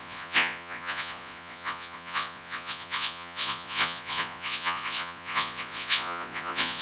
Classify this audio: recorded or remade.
remade